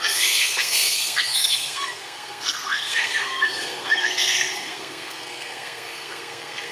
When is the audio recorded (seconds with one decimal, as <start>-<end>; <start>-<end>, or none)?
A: none